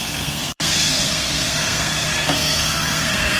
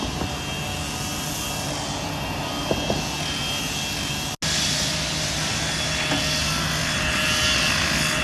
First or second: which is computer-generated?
first